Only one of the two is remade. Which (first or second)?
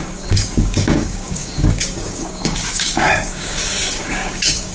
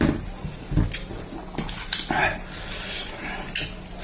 first